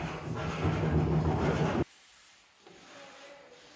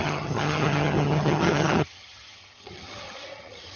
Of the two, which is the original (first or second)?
first